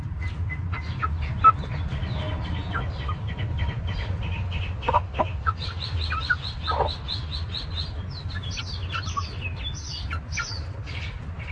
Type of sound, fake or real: real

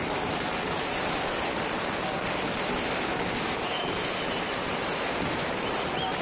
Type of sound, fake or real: real